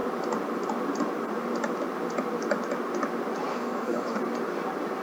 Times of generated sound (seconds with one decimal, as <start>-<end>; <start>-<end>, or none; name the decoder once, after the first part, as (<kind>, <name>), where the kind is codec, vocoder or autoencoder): 3.5-4.2 (codec, DAC)

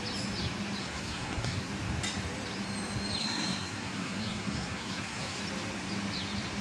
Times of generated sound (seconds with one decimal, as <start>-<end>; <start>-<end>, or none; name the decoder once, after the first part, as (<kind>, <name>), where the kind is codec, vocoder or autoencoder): 0.8-1.7 (codec, SNAC); 3.2-5.4

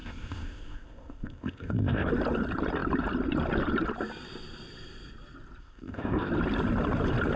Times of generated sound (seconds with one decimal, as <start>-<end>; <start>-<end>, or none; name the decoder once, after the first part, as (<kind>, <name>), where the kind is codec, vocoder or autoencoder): 0.0-2.1 (codec, ZipCodec); 5.6-6.3

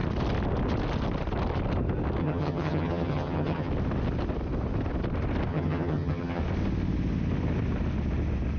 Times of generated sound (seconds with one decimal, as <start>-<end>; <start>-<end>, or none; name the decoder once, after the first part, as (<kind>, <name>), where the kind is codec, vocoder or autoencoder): 2.2-3.7 (vocoder, HiFi-GAN); 5.5-6.4

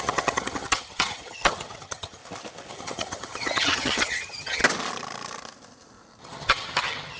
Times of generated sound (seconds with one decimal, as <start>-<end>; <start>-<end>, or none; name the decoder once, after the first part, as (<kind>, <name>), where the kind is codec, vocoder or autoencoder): 0.0-2.2 (vocoder, HiFi-GAN); 2.7-4.6; 6.2-7.2

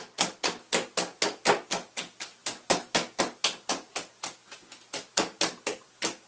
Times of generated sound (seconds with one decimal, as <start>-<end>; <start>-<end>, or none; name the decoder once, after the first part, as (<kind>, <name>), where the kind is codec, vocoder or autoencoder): none